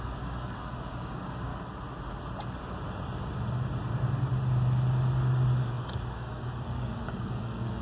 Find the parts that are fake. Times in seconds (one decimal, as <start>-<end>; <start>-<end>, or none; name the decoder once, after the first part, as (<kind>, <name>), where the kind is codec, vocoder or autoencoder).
0.0-1.5 (codec, DAC); 5.6-7.8